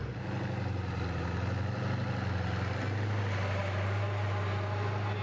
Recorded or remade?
recorded